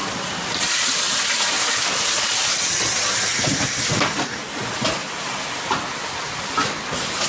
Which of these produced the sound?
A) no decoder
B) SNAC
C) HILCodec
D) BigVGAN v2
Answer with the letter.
A